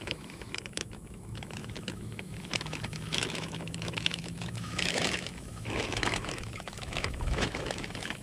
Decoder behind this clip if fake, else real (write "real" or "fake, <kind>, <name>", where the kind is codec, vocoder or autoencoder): fake, autoencoder, DAC-VAE